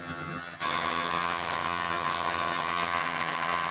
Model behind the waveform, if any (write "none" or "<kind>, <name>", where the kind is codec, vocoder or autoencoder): vocoder, HiFi-GAN